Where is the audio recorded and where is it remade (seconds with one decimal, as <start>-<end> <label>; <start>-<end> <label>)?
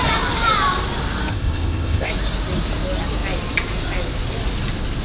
0.0-1.3 recorded; 1.3-2.1 remade; 2.1-5.0 recorded